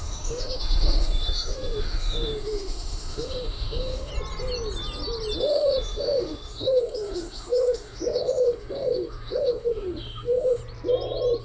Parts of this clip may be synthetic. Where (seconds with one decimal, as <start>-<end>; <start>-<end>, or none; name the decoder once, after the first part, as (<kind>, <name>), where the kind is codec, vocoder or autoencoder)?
0.0-4.1 (autoencoder, DAC-VAE); 5.4-10.6